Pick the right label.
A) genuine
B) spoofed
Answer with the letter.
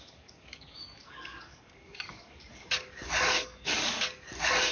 B